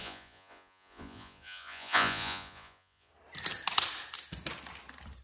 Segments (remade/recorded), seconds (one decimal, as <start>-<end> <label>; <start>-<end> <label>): 0.0-3.1 remade; 3.1-5.2 recorded